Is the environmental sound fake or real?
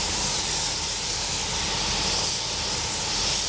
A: real